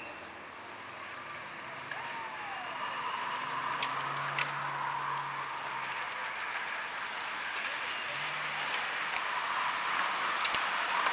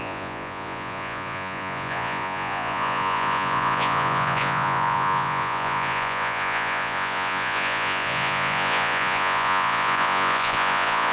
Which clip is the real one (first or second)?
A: first